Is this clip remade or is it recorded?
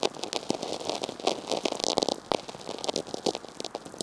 recorded